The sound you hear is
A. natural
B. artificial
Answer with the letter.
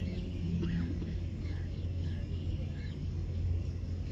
B